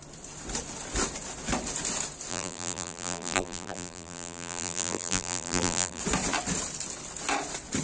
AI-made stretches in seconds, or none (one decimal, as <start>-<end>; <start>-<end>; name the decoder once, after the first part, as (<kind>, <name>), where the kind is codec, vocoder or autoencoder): 2.3-6.0 (vocoder, BigVGAN v2)